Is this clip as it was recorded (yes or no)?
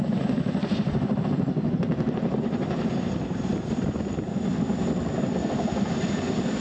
yes